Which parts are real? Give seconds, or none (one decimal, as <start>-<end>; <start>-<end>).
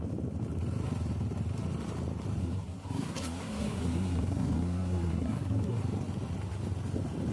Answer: 0.0-2.4; 5.8-7.3